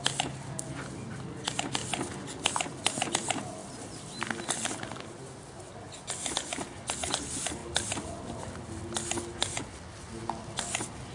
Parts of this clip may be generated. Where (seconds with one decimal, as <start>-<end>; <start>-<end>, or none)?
none